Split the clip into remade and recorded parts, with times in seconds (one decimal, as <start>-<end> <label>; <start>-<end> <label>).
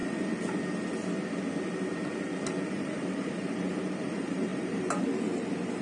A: 0.0-2.7 recorded; 2.7-5.8 remade